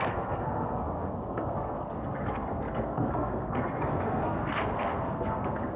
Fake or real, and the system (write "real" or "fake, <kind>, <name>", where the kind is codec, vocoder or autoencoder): fake, codec, SNAC